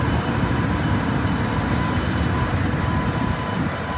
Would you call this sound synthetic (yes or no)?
yes